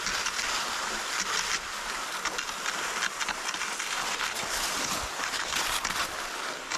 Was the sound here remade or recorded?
recorded